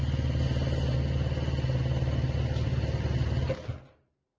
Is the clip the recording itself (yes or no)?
yes